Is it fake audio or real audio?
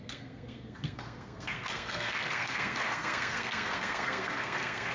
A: fake